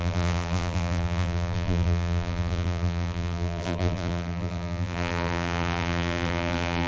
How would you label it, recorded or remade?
remade